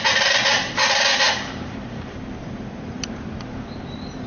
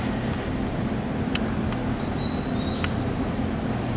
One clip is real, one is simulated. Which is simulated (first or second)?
first